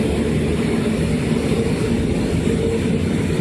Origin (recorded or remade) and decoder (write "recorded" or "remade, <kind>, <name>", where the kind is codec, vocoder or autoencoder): recorded